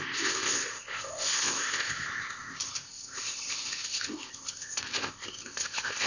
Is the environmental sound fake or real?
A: fake